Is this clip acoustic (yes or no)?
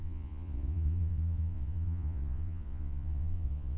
no